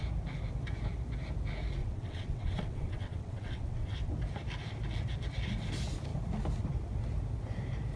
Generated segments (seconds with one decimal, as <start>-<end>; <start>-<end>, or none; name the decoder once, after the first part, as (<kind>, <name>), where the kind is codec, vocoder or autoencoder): 1.8-4.1 (vocoder, WaveNeXt)

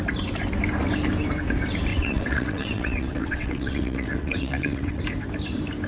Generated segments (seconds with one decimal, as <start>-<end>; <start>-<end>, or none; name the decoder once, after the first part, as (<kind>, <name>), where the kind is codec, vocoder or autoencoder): 1.9-5.0 (vocoder, WaveNeXt)

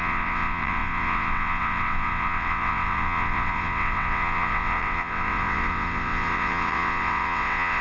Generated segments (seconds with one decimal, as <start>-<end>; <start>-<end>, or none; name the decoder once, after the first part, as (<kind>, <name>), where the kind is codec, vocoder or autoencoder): 0.0-7.8 (vocoder, WaveNeXt)

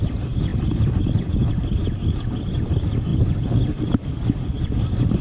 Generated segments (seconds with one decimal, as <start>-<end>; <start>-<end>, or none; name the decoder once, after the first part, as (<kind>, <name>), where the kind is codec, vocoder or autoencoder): none

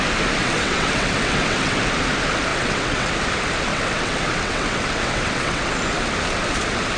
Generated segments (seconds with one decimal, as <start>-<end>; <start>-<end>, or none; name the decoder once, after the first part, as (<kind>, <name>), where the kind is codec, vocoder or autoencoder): 0.4-1.8 (vocoder, WaveNeXt); 2.5-3.2; 3.7-5.8

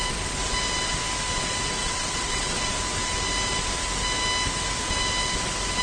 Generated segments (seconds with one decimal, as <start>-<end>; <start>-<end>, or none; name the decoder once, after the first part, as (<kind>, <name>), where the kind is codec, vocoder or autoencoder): 1.8-2.6 (vocoder, WaveNeXt)

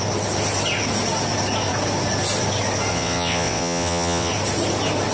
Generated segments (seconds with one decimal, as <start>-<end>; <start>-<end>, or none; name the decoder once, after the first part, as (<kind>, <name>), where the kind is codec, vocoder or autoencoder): 2.9-4.3 (vocoder, WaveNeXt)